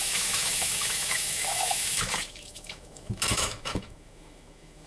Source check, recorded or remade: remade